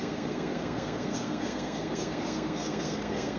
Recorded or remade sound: remade